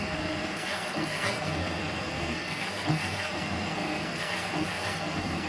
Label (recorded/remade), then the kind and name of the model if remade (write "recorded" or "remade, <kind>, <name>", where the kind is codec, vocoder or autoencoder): remade, codec, SNAC